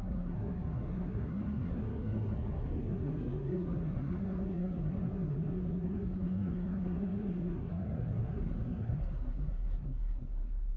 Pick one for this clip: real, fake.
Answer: fake